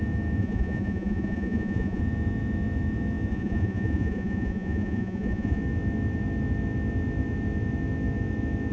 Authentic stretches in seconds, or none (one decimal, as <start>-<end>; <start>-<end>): 0.0-0.4; 2.0-3.3; 5.6-8.7